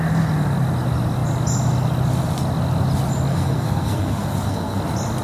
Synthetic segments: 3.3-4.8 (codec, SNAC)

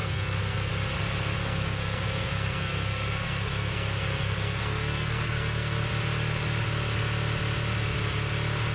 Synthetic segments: 0.0-0.7 (codec, SNAC); 1.4-5.8

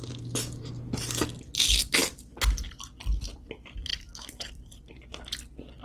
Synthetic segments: 3.9-4.5 (autoencoder, DAC-VAE)

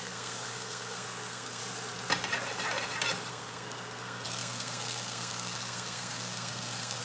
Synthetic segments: 0.0-1.6 (codec, SNAC); 3.3-7.0